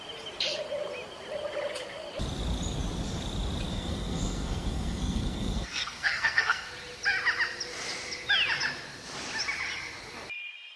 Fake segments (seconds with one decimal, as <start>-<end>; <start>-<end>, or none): 3.7-6.7